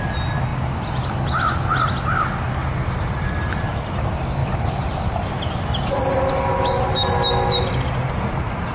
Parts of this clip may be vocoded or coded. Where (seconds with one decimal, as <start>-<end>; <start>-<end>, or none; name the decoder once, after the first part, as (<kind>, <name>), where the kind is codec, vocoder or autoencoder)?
0.5-1.2 (vocoder, BigVGAN v2); 2.6-3.3; 4.4-6.3